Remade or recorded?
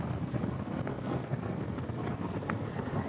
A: remade